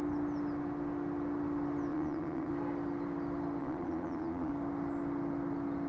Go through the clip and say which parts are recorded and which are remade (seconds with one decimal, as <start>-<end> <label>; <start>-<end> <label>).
0.0-1.9 recorded; 1.9-2.5 remade; 2.5-3.6 recorded; 3.6-4.5 remade; 4.5-5.9 recorded